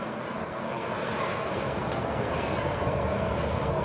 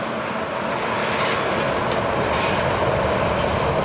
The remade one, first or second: first